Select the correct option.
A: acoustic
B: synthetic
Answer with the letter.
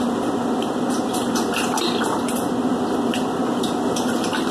A